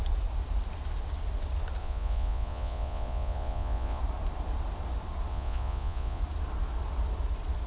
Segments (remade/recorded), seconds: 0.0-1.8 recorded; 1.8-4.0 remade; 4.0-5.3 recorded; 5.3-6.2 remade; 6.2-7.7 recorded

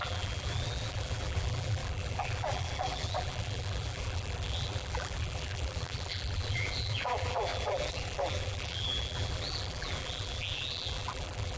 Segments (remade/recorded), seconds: 0.0-11.6 remade

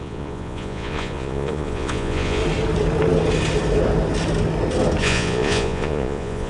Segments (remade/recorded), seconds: 0.0-2.4 remade; 2.4-5.0 recorded; 5.0-6.5 remade

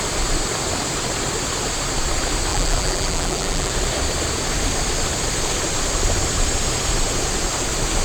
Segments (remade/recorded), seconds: 0.0-2.5 recorded; 2.5-3.7 remade; 3.7-8.0 recorded

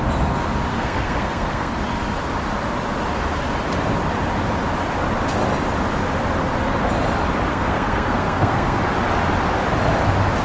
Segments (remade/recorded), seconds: 0.0-0.7 recorded; 0.7-1.7 remade; 1.7-7.5 recorded; 7.5-8.8 remade; 8.8-10.4 recorded

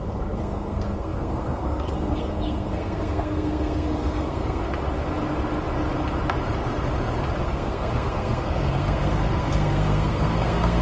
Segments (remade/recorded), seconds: 0.0-4.6 remade; 4.6-7.4 recorded; 7.4-10.8 remade

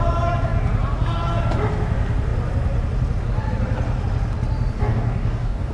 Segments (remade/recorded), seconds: 0.0-4.8 recorded; 4.8-5.7 remade